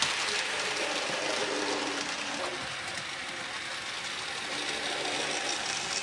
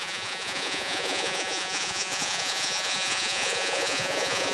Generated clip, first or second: second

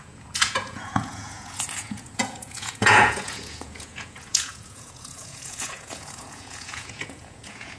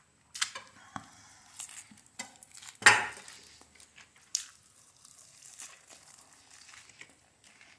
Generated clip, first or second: first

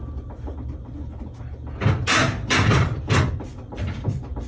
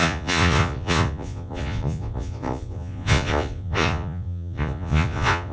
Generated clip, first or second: second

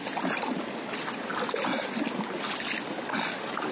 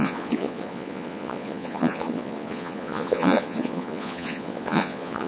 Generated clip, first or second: second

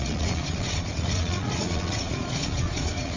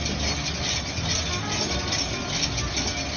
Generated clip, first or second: first